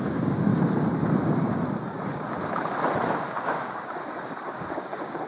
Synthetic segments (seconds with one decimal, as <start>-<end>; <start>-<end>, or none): 0.0-0.5; 3.1-5.3